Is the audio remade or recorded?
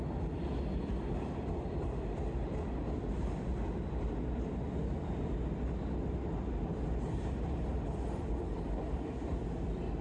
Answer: recorded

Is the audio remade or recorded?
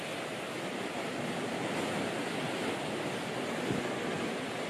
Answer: recorded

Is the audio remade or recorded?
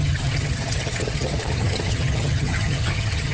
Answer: remade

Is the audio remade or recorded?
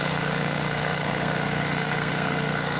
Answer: remade